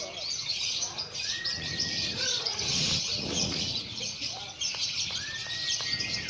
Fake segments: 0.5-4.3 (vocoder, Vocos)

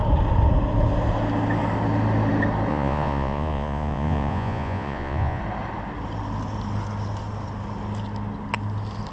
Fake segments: 2.7-5.4 (vocoder, Vocos)